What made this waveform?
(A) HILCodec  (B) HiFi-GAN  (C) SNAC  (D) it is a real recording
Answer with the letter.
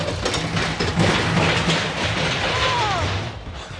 D